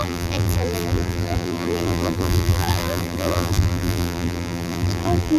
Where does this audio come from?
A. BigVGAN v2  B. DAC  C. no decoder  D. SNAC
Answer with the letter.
A